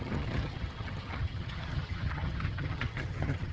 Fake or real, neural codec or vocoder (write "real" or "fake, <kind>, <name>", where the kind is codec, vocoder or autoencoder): fake, vocoder, HiFi-GAN